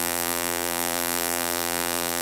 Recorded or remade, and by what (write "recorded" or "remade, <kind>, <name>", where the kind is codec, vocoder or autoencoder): remade, vocoder, BigVGAN v2